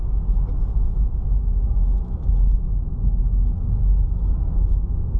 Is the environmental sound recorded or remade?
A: remade